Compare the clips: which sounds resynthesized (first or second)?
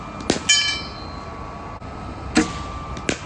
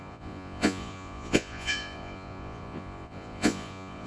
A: second